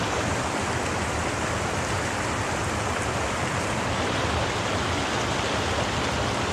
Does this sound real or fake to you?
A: real